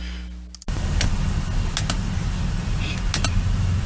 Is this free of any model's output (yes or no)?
yes